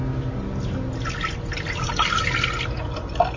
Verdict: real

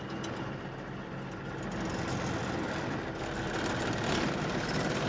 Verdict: real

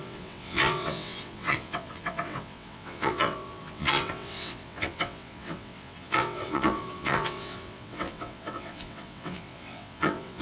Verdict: fake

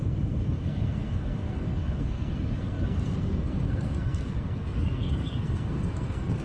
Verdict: fake